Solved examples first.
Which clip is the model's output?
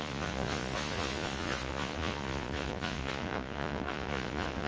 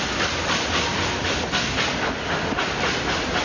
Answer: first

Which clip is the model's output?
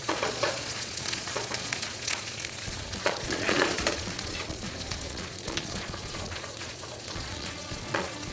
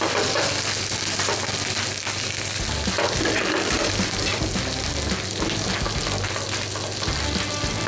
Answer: first